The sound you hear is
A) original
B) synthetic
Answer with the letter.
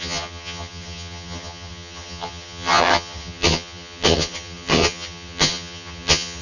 B